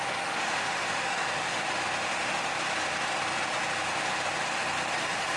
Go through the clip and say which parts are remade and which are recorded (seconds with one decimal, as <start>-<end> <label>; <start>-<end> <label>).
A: 0.0-1.6 remade; 1.6-2.1 recorded; 2.1-2.5 remade; 2.5-5.0 recorded; 5.0-5.4 remade